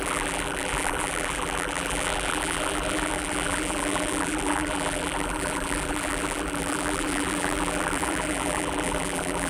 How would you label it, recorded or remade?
remade